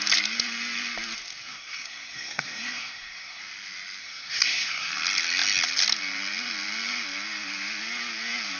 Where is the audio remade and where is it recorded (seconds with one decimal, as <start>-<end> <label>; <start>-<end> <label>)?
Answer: 0.0-1.5 recorded; 1.5-3.4 remade; 3.4-4.0 recorded; 4.0-4.9 remade; 4.9-8.6 recorded

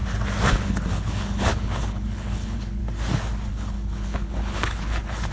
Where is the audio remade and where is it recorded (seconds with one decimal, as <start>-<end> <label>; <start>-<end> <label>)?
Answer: 0.0-0.5 recorded; 0.5-2.8 remade; 2.8-3.5 recorded; 3.5-5.3 remade

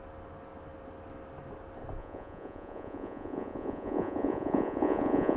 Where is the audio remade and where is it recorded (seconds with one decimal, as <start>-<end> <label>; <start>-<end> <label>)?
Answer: 0.0-2.0 recorded; 2.0-5.4 remade

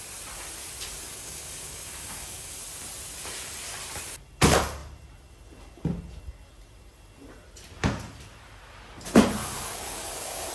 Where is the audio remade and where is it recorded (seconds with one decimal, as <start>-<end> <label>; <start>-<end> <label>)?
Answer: 0.0-1.0 recorded; 1.0-2.6 remade; 2.6-9.4 recorded; 9.4-10.5 remade

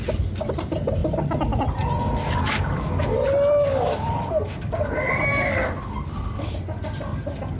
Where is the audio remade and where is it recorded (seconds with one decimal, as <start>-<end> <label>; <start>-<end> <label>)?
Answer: 0.0-7.6 recorded

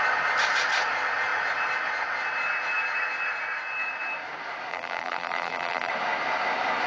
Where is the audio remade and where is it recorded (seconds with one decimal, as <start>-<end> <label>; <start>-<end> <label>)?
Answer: 0.0-4.7 recorded; 4.7-5.9 remade; 5.9-6.9 recorded

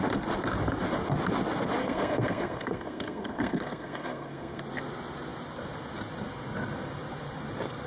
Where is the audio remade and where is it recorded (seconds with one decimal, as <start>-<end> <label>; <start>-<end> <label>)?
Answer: 0.0-1.8 recorded; 1.8-4.6 remade; 4.6-7.9 recorded

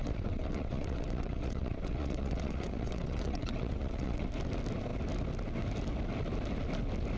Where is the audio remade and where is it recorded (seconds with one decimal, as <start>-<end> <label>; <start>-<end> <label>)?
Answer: 0.0-4.3 remade; 4.3-7.2 recorded